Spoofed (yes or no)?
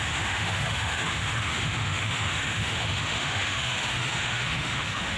yes